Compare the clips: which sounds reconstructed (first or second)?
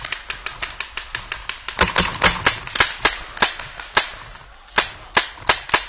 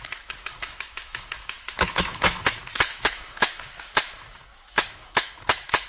second